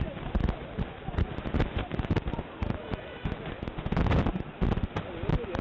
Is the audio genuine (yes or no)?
yes